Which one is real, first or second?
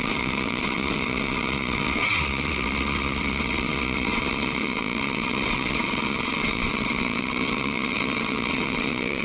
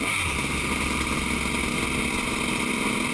second